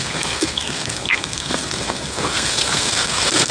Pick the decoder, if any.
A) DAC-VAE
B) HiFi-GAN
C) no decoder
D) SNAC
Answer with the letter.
D